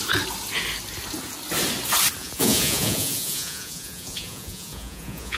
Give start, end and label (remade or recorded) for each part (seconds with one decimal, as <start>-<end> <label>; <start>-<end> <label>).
0.0-2.2 recorded; 2.2-5.4 remade